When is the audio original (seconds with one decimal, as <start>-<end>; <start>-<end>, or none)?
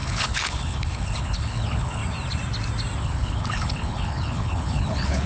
2.0-3.0